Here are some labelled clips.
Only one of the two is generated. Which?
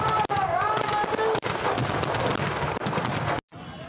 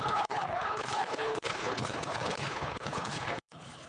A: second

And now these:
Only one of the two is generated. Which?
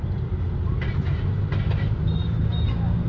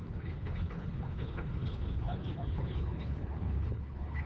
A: second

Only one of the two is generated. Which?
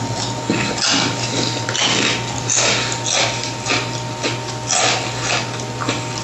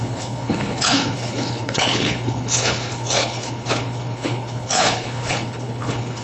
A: second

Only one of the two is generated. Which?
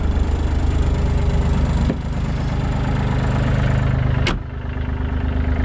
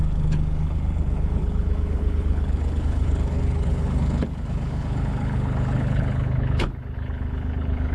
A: second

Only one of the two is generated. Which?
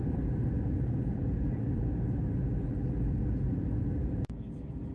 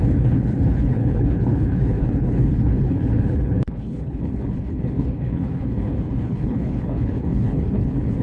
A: second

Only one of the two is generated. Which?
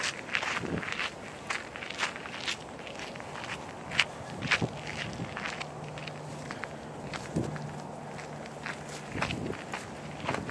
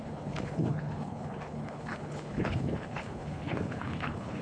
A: second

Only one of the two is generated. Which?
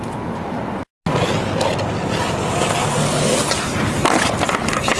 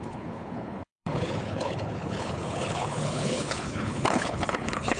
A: second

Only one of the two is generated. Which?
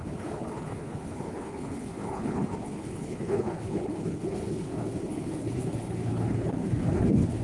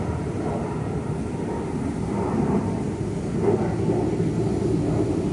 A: first